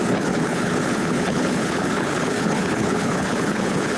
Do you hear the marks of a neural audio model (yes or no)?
yes